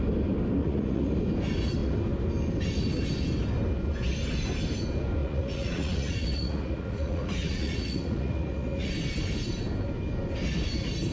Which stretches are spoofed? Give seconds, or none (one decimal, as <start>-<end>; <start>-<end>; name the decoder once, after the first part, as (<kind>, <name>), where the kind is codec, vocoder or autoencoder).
0.6-1.1 (vocoder, Vocos); 5.2-8.9